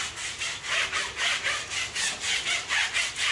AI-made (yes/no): no